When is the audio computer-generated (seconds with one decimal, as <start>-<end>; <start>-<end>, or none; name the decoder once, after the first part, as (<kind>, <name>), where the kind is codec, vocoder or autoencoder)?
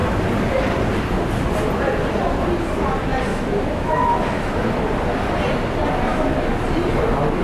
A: 3.3-4.8 (autoencoder, DAC-VAE); 6.1-6.6